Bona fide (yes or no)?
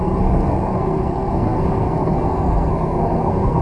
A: no